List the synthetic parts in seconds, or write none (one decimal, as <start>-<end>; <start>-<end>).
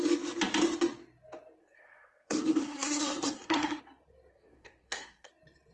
1.6-3.8; 4.3-5.3